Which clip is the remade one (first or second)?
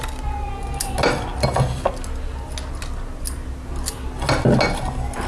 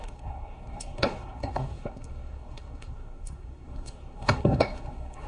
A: second